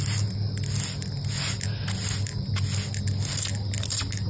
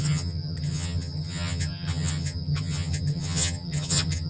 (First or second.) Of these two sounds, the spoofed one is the second